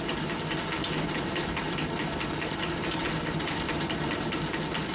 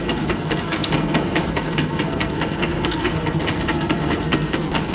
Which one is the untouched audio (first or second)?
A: first